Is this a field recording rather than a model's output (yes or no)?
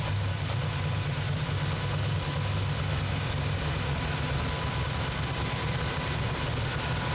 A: yes